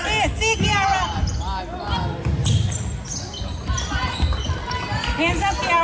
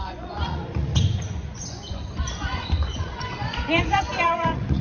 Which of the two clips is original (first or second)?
first